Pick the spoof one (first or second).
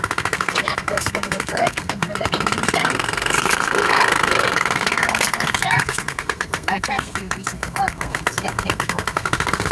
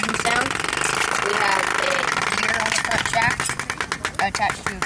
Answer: first